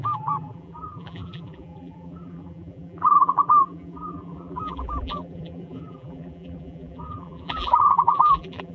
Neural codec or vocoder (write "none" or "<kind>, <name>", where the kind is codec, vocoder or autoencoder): vocoder, BigVGAN v2